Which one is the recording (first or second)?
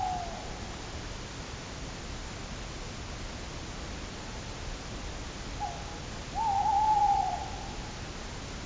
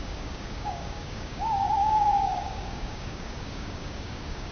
first